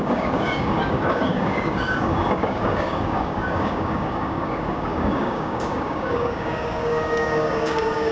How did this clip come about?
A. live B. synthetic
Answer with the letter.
B